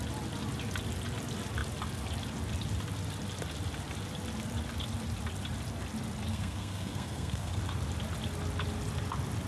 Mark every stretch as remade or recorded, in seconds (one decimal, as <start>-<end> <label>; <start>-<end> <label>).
0.0-6.3 recorded; 6.3-7.6 remade; 7.6-9.5 recorded